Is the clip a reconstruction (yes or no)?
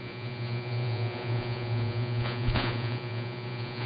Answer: yes